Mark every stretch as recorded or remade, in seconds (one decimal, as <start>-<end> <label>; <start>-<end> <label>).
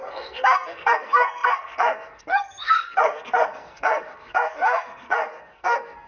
0.0-6.1 remade